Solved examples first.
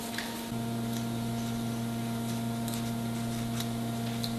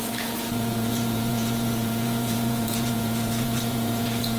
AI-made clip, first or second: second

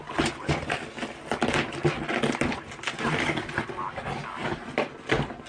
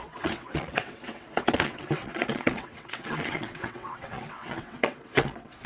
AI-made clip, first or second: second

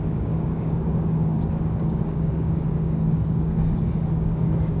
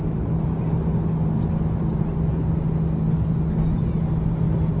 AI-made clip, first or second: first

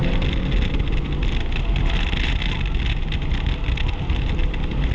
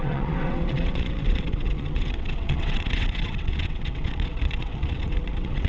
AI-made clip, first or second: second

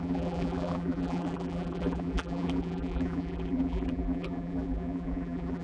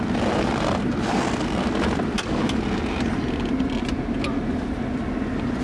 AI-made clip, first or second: first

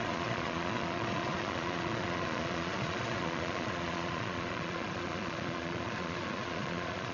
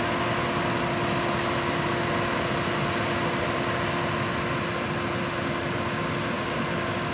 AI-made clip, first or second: first